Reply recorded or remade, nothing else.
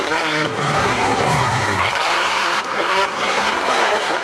remade